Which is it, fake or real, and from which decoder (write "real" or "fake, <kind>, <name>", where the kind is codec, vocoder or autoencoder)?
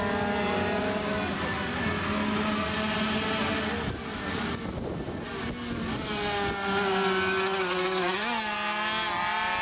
real